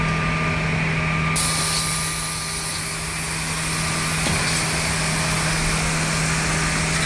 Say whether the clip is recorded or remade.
recorded